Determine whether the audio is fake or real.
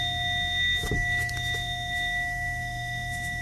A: fake